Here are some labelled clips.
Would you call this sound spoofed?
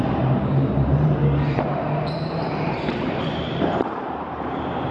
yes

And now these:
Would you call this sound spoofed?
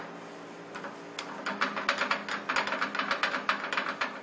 no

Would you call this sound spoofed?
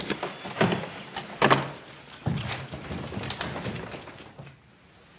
no